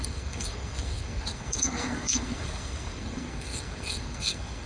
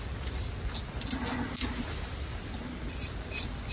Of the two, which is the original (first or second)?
second